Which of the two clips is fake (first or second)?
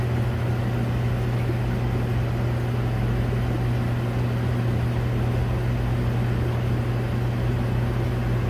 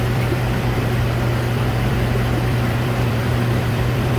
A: second